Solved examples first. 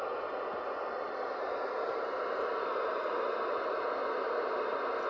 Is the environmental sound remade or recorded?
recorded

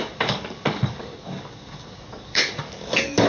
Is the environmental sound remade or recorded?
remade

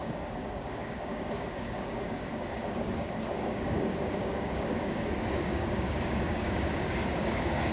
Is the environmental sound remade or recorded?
remade